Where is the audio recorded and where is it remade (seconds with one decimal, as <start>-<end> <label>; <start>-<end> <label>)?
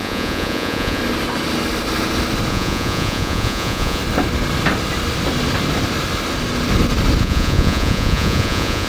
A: 0.0-1.0 remade; 1.0-2.5 recorded; 2.5-4.0 remade; 4.0-7.2 recorded; 7.2-8.9 remade